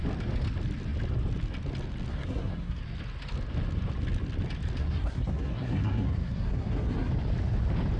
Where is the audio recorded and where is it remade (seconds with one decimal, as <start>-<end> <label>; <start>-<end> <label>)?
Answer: 0.0-2.1 recorded; 2.1-2.8 remade; 2.8-4.8 recorded; 4.8-7.1 remade; 7.1-8.0 recorded